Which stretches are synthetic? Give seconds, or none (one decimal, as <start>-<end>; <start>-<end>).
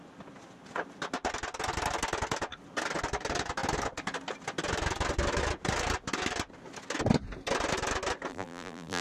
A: 8.3-9.0